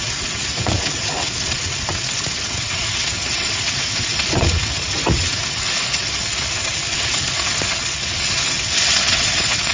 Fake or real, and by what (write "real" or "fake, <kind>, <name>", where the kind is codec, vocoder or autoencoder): fake, vocoder, WaveNeXt